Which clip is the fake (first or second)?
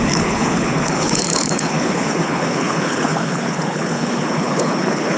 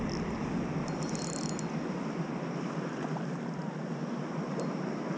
first